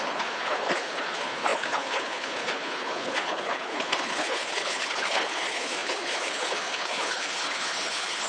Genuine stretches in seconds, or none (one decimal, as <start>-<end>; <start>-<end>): none